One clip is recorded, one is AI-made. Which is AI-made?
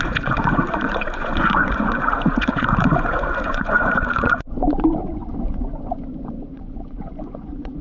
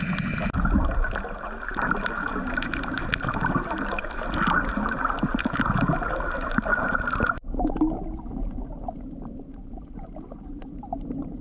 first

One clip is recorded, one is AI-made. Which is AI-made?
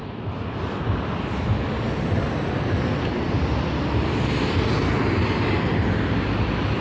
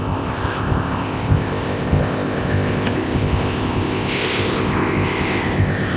second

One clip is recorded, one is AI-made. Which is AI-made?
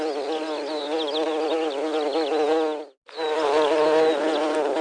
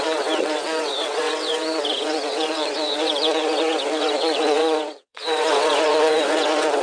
second